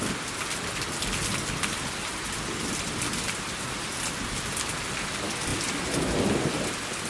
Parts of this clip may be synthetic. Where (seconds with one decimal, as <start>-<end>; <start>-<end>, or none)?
none